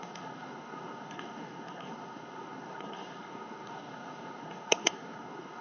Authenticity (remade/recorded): remade